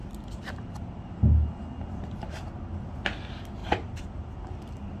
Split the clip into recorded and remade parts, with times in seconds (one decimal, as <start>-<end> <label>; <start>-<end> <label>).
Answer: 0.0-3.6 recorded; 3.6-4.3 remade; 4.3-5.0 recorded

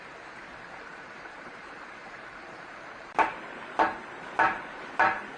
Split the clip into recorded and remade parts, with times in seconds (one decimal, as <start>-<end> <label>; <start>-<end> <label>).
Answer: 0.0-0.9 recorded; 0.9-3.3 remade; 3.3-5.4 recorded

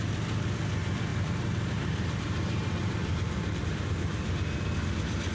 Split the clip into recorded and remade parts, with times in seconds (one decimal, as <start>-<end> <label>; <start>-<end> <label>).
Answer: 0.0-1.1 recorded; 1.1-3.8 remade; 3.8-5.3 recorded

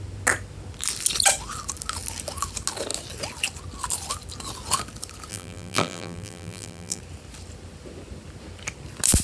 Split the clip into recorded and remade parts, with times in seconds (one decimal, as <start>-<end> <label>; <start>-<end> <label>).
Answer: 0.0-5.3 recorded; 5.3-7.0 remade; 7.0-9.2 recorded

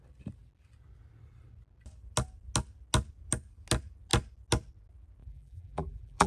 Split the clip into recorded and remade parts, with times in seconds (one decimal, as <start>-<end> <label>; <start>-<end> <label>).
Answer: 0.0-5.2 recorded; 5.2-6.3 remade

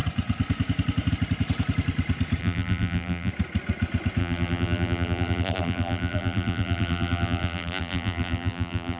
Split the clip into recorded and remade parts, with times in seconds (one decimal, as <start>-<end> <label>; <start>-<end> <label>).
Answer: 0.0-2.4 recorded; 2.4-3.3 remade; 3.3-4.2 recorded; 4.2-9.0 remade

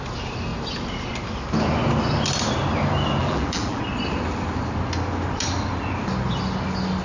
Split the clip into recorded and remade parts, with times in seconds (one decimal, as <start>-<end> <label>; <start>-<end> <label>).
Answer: 0.0-3.2 recorded; 3.2-3.8 remade; 3.8-7.0 recorded

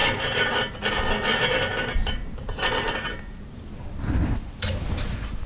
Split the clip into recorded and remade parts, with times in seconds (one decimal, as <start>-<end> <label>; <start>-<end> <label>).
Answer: 0.0-0.7 remade; 0.7-1.3 recorded; 1.3-4.6 remade; 4.6-5.5 recorded